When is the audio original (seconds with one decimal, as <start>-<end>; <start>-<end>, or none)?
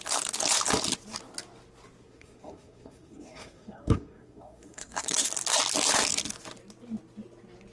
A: 0.0-2.0; 5.3-7.7